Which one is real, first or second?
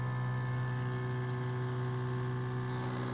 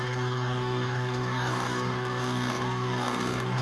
first